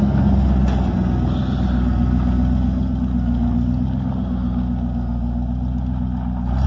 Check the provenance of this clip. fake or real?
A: real